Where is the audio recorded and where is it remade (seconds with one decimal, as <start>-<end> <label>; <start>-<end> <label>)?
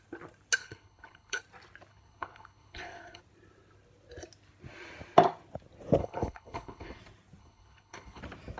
0.0-0.6 recorded; 0.6-1.4 remade; 1.4-1.9 recorded; 1.9-3.2 remade; 3.2-6.0 recorded; 6.0-7.0 remade; 7.0-7.4 recorded; 7.4-8.2 remade; 8.2-8.6 recorded